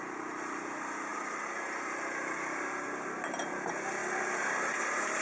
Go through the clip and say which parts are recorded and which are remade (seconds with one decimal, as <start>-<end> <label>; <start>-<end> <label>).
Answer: 0.0-5.2 recorded